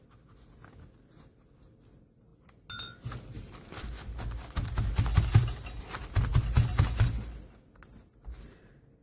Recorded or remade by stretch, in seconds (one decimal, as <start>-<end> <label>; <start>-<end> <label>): 0.0-9.0 recorded